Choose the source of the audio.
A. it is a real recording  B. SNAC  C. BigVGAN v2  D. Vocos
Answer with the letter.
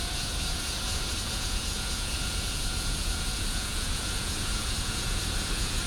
D